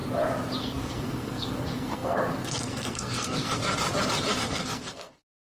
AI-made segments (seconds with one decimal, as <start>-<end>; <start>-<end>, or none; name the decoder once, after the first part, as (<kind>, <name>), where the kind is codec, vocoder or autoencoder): 0.6-3.6 (codec, SNAC); 4.4-5.5